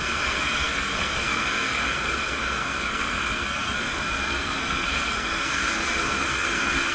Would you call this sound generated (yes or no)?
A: yes